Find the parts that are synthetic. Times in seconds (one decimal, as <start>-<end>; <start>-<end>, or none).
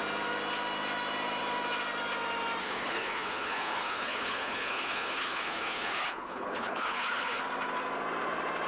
2.6-7.4